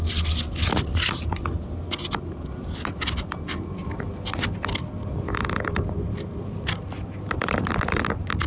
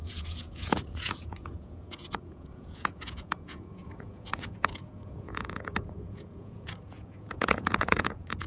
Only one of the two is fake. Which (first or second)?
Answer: second